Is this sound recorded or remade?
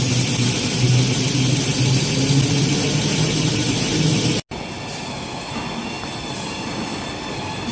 recorded